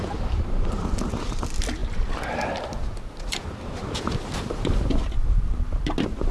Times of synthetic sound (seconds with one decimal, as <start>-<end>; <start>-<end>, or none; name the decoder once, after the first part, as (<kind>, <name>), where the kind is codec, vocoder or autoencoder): none